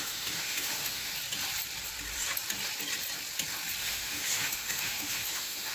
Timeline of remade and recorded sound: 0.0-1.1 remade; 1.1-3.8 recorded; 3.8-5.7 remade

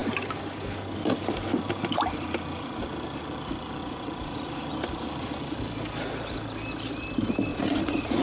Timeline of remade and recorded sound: 0.0-3.8 recorded; 3.8-4.6 remade; 4.6-7.5 recorded; 7.5-8.2 remade

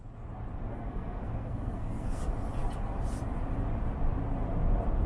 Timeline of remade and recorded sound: 0.0-0.7 recorded; 0.7-2.2 remade; 2.2-5.1 recorded

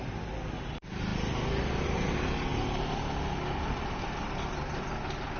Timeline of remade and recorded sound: 0.0-5.4 recorded

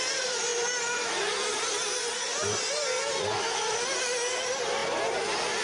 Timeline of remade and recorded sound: 0.0-5.6 recorded